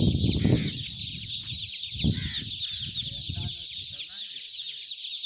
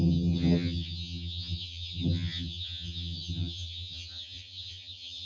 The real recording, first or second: first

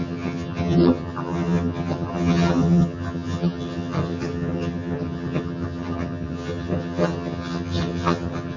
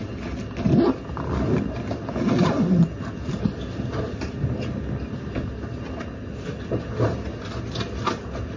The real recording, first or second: second